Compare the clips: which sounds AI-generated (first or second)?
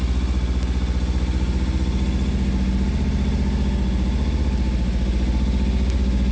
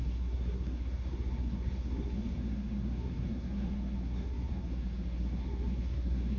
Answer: second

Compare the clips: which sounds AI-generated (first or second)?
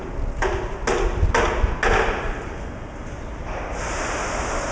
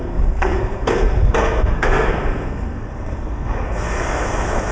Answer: second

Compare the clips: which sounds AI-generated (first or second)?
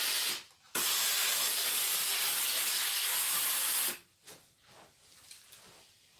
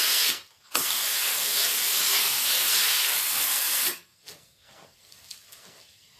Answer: second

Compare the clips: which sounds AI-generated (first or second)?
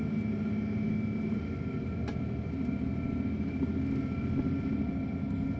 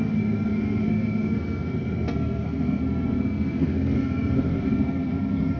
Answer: second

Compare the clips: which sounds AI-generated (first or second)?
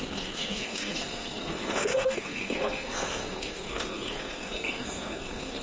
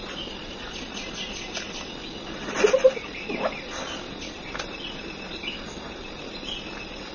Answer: first